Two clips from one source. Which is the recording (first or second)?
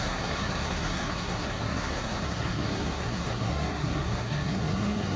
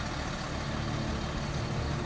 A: second